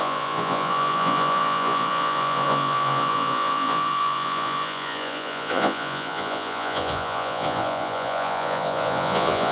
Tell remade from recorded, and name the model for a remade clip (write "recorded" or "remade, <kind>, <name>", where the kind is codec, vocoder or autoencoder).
remade, vocoder, Vocos